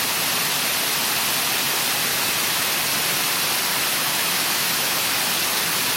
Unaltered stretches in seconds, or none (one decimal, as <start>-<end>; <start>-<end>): 0.0-2.1; 2.7-3.9; 5.1-6.0